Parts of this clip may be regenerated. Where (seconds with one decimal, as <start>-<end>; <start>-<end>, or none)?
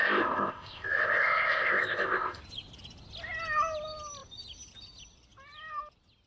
0.0-2.4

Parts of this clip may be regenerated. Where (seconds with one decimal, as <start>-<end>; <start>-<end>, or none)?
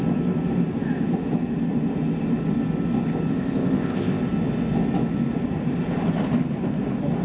3.3-4.2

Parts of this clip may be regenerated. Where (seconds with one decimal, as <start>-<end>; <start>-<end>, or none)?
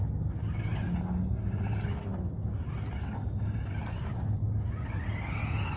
none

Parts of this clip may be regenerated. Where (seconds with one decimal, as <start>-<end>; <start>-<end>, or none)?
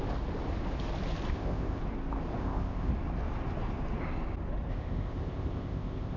1.3-1.8; 2.4-2.9; 4.7-6.2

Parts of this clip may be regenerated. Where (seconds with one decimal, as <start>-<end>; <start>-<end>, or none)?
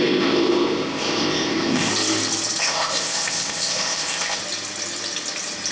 0.0-1.9; 2.6-4.4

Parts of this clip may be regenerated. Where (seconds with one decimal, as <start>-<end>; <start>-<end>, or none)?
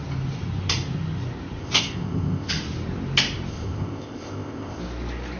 1.6-2.5; 3.5-4.8